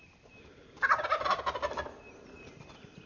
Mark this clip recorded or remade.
recorded